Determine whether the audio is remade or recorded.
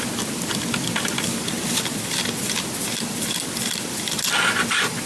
recorded